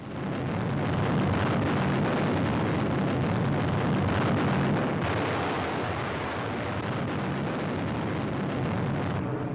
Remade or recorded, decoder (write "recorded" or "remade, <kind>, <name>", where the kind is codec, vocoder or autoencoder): recorded